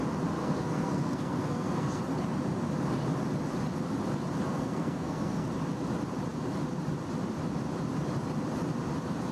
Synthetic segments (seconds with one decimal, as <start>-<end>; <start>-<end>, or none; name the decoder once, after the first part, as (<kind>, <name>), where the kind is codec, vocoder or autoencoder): 0.4-2.0 (codec, SNAC); 4.5-5.5